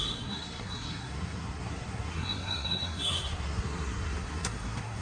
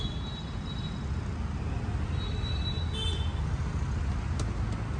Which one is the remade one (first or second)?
first